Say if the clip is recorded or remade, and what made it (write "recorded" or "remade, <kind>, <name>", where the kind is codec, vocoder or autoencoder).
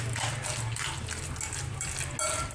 recorded